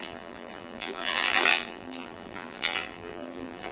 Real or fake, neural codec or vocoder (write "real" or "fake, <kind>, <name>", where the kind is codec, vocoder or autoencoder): fake, vocoder, BigVGAN v2